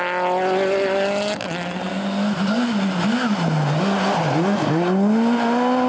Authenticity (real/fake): real